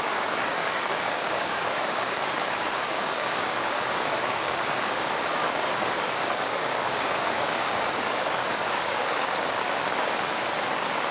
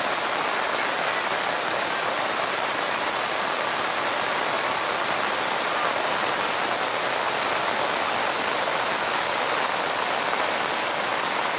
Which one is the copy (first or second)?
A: first